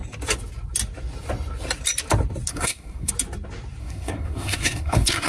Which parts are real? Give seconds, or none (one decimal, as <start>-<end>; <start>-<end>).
0.0-2.5; 3.1-3.8